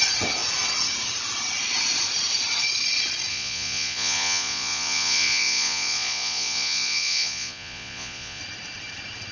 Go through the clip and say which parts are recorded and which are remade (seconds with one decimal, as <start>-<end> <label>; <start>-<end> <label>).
0.0-3.3 recorded; 3.3-8.4 remade; 8.4-9.3 recorded